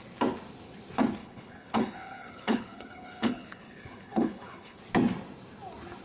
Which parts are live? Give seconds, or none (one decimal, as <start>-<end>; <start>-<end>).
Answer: 0.0-1.2; 4.8-6.0